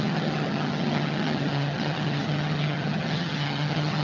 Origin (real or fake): fake